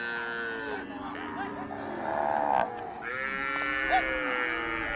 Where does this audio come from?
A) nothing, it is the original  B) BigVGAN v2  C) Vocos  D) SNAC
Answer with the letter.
A